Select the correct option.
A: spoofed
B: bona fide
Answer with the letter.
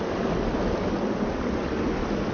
B